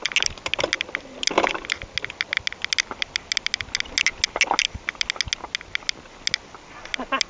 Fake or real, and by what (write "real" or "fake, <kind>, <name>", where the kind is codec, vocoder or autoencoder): real